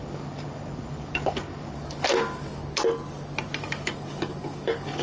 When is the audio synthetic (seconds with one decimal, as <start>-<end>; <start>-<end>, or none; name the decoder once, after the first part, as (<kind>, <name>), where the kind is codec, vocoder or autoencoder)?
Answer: 0.0-2.6 (codec, DAC); 3.6-5.0

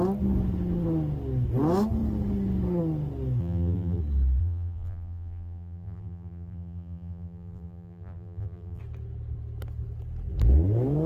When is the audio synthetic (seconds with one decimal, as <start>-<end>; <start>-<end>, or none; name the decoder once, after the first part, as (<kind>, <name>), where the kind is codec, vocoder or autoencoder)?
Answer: 3.4-4.0 (vocoder, BigVGAN v2); 4.4-8.8

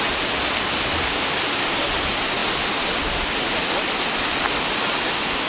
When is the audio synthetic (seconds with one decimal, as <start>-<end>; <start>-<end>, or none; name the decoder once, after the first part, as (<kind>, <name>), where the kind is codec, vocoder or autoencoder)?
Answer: none